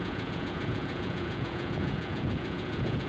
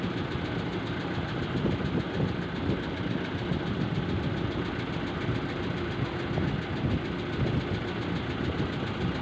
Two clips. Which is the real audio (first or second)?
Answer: second